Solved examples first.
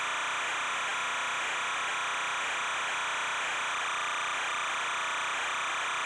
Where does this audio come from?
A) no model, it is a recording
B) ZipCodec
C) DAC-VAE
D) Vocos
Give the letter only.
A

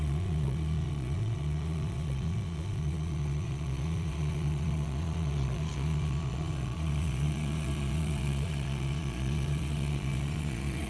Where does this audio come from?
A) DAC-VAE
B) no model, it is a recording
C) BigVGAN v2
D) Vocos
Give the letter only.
D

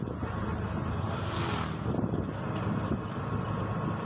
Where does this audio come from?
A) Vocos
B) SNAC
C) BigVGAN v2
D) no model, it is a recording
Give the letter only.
D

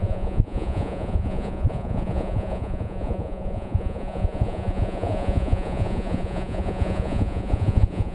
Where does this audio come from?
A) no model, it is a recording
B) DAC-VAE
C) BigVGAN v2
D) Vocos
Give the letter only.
D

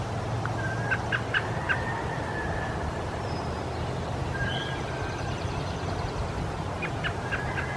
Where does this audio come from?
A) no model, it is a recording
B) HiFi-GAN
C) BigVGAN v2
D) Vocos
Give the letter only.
A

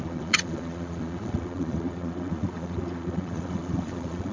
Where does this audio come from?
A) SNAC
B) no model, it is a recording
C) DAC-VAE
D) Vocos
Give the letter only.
D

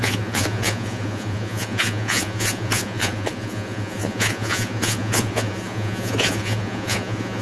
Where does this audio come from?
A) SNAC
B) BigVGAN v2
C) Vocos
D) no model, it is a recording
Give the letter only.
C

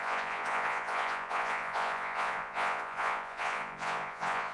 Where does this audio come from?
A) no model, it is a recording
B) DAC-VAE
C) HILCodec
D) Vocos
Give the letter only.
D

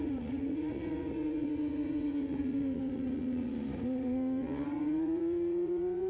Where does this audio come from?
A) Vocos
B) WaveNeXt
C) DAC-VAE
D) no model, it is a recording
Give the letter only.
A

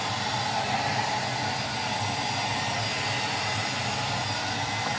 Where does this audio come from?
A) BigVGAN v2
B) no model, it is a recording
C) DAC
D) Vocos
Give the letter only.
B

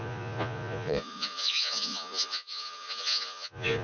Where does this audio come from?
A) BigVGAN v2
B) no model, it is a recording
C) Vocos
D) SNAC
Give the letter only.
C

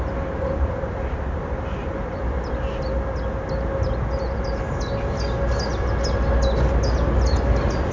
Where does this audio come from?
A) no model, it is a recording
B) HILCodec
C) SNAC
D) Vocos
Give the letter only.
A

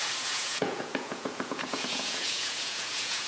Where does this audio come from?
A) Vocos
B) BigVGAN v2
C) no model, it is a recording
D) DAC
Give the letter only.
A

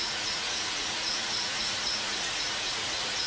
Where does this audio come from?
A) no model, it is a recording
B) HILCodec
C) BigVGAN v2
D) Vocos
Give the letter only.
D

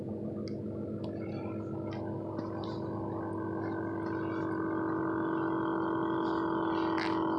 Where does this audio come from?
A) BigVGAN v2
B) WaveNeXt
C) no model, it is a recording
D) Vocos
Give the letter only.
C